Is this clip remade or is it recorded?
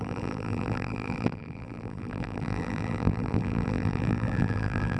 remade